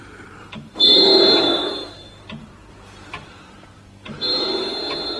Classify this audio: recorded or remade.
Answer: remade